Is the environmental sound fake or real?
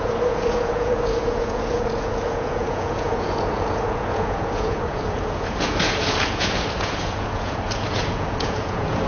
fake